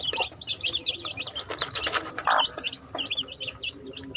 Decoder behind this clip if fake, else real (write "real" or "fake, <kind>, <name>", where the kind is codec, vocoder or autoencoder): real